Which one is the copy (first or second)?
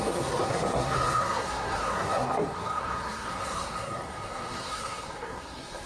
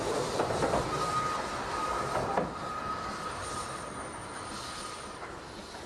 first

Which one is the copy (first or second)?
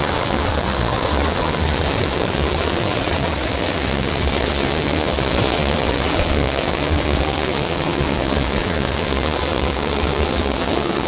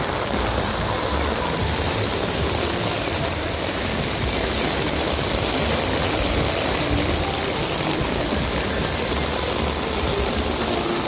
first